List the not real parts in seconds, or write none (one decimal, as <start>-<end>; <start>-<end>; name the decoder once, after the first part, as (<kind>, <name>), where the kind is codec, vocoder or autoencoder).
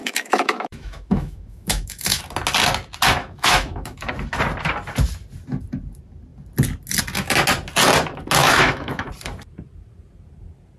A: 0.0-2.2 (autoencoder, DAC-VAE); 3.2-4.1; 8.4-9.1